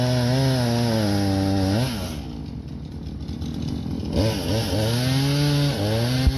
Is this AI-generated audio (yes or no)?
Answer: no